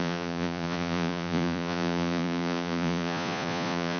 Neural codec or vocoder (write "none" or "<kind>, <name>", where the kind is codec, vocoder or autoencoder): vocoder, Vocos